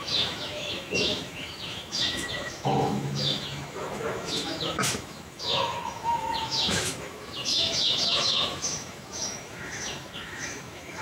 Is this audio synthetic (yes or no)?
yes